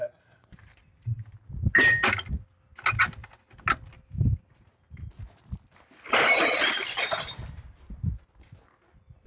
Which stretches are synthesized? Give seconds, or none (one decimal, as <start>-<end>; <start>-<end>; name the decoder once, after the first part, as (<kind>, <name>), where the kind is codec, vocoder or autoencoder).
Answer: none